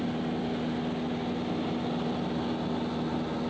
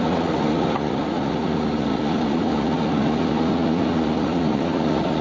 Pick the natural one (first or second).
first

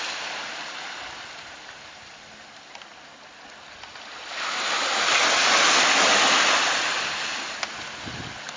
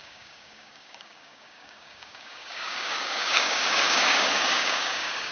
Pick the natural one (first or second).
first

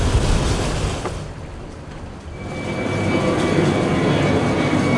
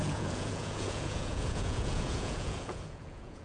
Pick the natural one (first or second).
first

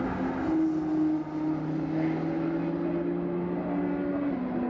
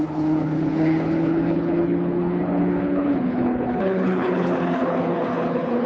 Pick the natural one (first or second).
first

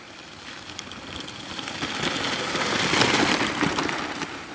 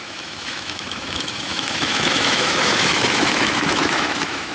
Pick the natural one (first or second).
first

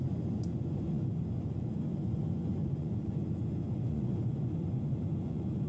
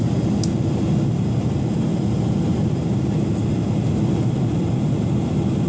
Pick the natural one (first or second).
second